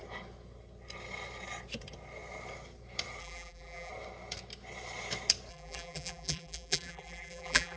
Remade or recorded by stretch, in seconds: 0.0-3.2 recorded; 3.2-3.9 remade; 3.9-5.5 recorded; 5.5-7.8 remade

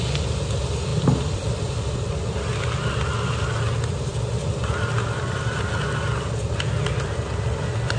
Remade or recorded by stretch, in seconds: 0.0-0.9 recorded; 0.9-2.1 remade; 2.1-8.0 recorded

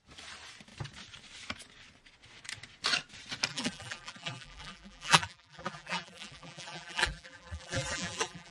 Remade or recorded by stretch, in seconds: 0.0-3.5 recorded; 3.5-8.5 remade

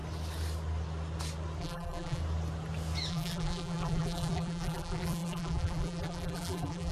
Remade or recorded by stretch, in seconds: 0.0-1.6 recorded; 1.6-2.2 remade; 2.2-3.1 recorded; 3.1-6.9 remade

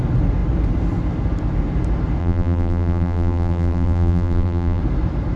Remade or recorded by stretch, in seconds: 0.0-2.2 recorded; 2.2-4.8 remade; 4.8-5.4 recorded

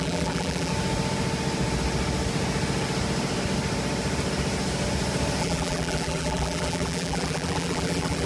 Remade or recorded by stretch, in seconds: 0.0-0.7 remade; 0.7-5.4 recorded; 5.4-8.3 remade